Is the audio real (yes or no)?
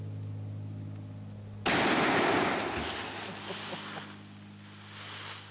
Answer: yes